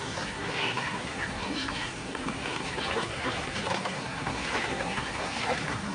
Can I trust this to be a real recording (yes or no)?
no